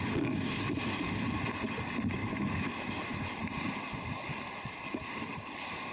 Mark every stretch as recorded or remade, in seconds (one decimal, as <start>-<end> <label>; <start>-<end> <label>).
0.0-2.2 recorded; 2.2-2.9 remade; 2.9-5.9 recorded